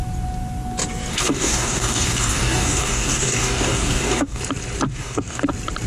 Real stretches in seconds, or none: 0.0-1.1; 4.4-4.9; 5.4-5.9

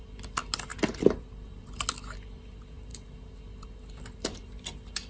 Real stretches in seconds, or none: 0.0-5.1

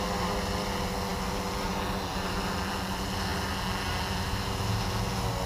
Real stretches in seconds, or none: 0.0-5.5

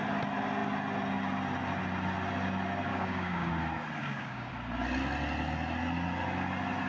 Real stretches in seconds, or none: 0.0-2.9; 3.5-4.0; 4.5-6.9

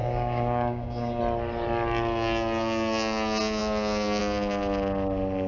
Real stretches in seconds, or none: 1.2-5.5

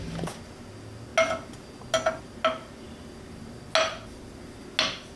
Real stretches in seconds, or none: 0.0-5.2

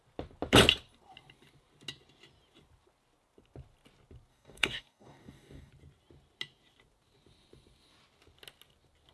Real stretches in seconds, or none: 0.0-4.3; 5.7-9.1

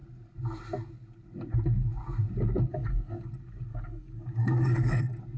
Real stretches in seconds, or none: 0.0-2.7; 3.3-3.7; 5.0-5.4